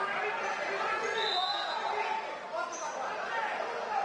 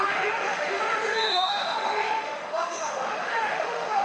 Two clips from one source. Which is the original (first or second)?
first